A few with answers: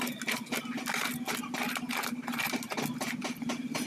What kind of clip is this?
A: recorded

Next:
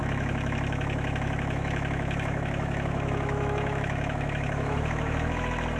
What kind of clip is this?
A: remade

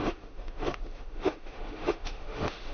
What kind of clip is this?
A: remade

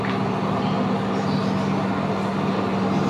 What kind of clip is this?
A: recorded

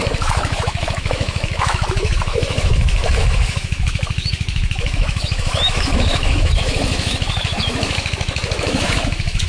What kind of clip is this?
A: remade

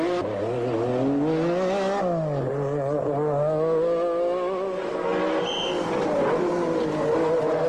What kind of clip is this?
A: recorded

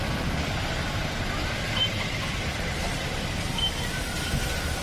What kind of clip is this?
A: recorded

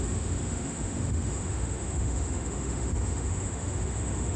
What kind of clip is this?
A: remade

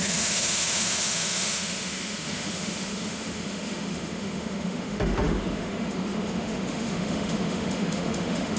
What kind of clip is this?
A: remade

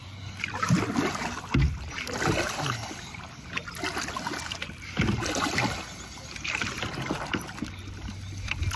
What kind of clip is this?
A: recorded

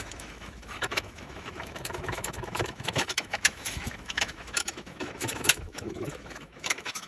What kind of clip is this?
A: remade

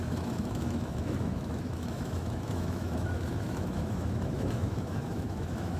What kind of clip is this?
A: remade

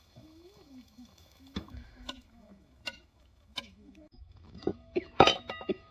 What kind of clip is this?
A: remade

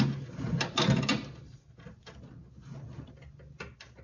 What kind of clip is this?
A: recorded